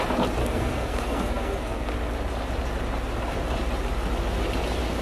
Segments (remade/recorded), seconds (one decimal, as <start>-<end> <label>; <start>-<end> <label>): 0.0-0.4 recorded; 0.4-1.9 remade; 1.9-5.0 recorded